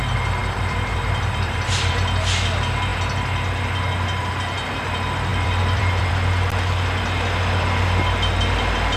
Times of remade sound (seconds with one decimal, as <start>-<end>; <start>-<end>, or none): 0.4-1.9; 5.3-6.1